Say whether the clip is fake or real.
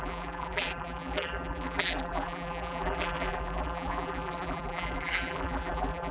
fake